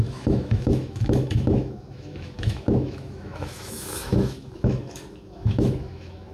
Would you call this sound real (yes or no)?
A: no